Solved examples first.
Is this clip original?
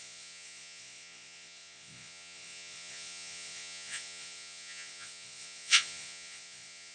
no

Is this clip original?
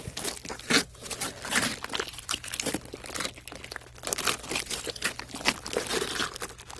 yes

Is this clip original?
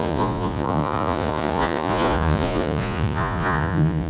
no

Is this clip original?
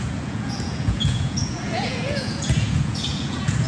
no